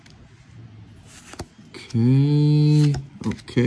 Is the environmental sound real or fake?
real